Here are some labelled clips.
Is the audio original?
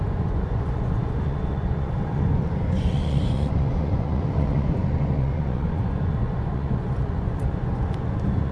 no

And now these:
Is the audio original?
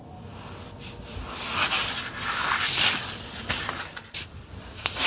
yes